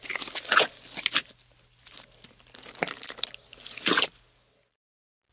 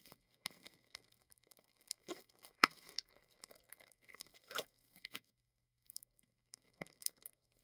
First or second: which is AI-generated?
second